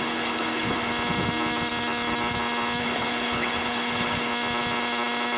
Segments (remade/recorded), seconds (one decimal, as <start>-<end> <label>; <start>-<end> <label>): 0.0-0.9 remade; 0.9-2.8 recorded; 2.8-4.3 remade; 4.3-5.4 recorded